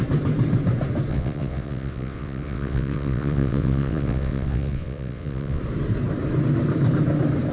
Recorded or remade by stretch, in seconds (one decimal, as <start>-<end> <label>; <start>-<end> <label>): 0.0-1.1 recorded; 1.1-5.6 remade; 5.6-7.5 recorded